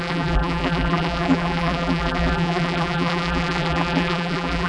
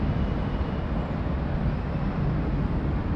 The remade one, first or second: first